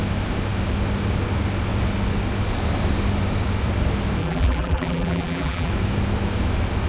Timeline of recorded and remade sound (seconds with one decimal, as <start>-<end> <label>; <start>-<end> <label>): 0.0-4.2 recorded; 4.2-5.7 remade; 5.7-6.9 recorded